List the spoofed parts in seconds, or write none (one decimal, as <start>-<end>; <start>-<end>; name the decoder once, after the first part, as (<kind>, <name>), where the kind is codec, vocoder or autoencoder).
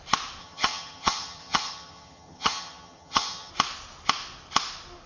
0.4-3.5 (vocoder, HiFi-GAN)